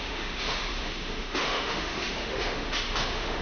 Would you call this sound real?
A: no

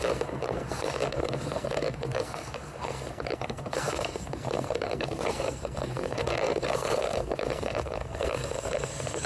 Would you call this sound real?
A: no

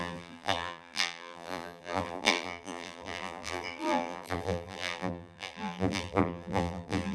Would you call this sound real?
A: no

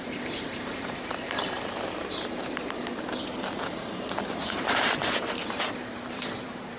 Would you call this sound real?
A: no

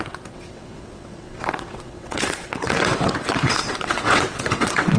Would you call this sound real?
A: no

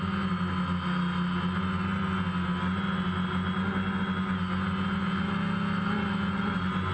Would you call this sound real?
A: yes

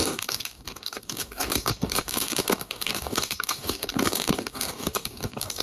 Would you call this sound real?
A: no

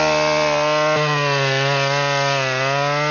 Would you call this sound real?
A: yes